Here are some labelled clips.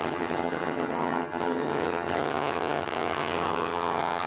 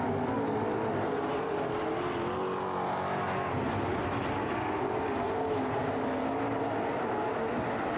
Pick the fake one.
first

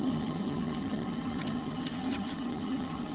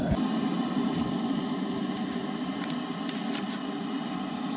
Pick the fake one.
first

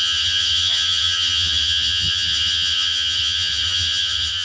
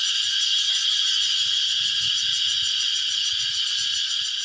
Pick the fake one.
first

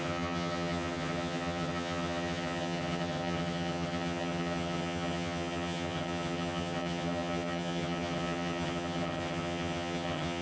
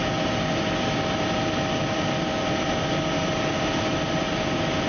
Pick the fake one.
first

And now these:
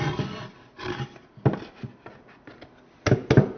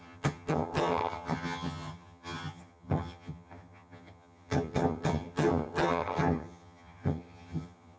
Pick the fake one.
second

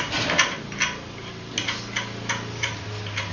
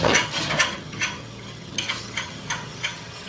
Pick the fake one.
second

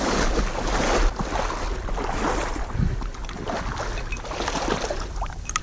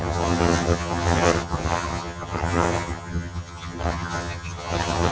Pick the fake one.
second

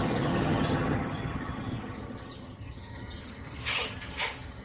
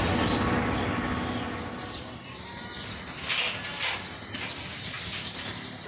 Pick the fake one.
first